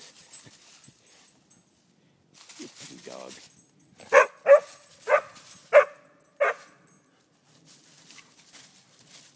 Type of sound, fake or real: real